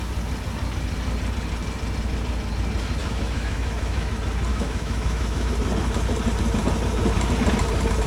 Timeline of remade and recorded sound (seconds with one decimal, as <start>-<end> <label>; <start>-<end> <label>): 0.0-3.0 recorded; 3.0-4.1 remade; 4.1-4.5 recorded; 4.5-5.5 remade; 5.5-8.1 recorded